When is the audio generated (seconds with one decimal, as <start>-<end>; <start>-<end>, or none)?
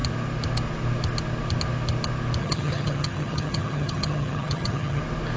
2.4-5.0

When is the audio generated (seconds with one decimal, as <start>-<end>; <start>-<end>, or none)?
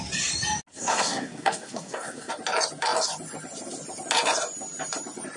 0.7-2.3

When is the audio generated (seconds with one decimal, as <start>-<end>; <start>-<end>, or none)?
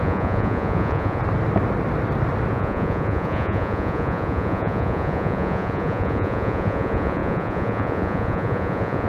0.0-1.2; 2.5-9.1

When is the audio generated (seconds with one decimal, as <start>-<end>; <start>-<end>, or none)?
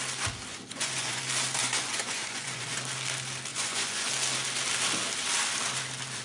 0.5-1.2; 1.6-2.8; 3.5-4.1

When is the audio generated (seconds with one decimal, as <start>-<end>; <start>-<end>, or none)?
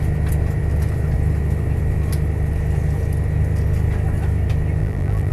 4.8-5.3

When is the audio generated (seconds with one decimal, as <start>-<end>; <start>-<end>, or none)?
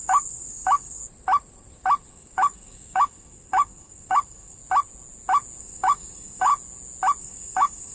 0.0-1.0; 2.1-4.6; 5.6-6.5; 7.2-7.9